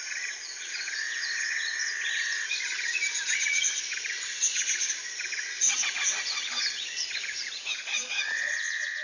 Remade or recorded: remade